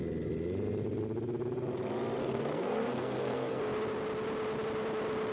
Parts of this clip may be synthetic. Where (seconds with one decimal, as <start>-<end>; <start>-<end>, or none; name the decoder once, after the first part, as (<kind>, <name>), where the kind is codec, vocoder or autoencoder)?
2.2-3.6 (codec, SNAC)